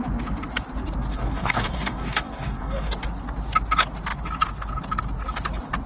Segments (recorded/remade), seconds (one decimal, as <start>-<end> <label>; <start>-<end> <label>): 0.0-1.1 recorded; 1.1-2.9 remade; 2.9-5.9 recorded